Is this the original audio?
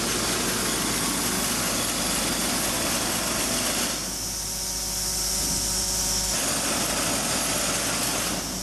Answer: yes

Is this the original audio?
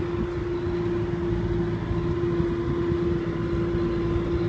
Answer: yes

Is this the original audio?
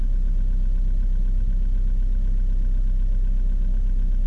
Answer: yes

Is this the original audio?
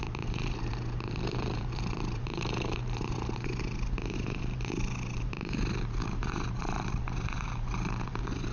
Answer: no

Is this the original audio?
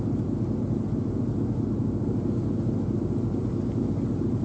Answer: yes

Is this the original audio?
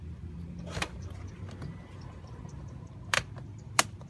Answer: no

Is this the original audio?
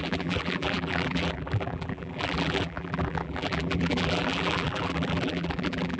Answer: no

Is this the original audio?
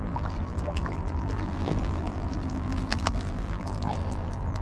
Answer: no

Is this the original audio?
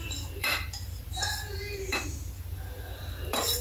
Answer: no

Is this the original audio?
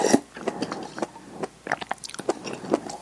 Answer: yes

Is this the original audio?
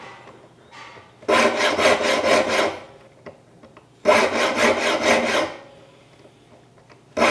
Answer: yes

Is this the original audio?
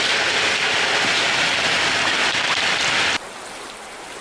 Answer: yes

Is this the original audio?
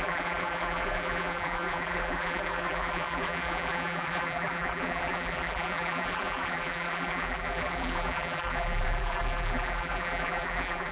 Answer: no